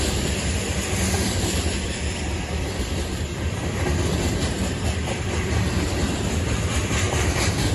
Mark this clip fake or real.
fake